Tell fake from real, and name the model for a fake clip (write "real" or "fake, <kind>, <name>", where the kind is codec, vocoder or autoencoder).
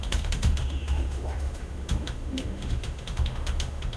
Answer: fake, autoencoder, DAC-VAE